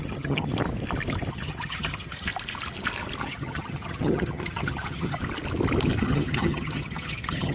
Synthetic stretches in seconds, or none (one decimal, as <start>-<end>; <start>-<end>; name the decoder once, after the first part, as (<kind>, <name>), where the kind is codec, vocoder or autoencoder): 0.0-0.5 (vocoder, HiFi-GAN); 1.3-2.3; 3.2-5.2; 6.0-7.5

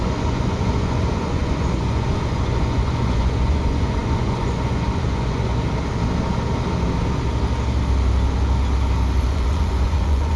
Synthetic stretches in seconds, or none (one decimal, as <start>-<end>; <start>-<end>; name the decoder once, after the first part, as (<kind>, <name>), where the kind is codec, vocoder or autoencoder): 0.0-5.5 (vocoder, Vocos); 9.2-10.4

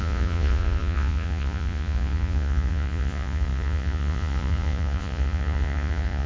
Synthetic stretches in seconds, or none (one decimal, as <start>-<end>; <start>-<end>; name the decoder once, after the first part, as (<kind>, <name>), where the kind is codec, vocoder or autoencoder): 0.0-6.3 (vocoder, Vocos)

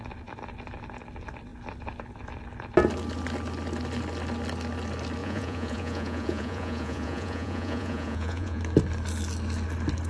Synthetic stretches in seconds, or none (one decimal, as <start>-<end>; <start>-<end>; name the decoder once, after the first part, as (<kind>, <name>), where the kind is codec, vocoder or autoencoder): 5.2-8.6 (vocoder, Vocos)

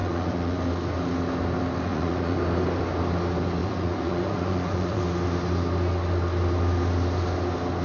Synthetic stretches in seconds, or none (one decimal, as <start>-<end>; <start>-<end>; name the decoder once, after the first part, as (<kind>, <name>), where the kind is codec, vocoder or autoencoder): 0.0-0.6 (vocoder, Vocos); 1.9-2.4; 3.6-5.0

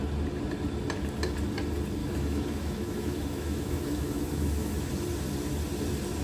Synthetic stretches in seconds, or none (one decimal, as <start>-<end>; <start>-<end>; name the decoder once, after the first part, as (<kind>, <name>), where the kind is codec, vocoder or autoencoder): 2.0-4.9 (autoencoder, DAC-VAE)

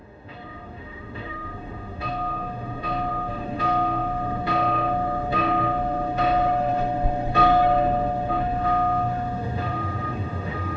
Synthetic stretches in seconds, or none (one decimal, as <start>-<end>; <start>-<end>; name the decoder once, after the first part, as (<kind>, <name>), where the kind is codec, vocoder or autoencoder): 0.0-10.8 (autoencoder, DAC-VAE)

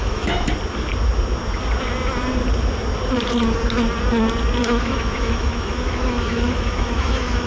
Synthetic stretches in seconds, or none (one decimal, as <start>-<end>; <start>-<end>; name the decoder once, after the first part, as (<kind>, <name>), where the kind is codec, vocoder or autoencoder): 0.0-0.5 (autoencoder, DAC-VAE); 4.6-7.5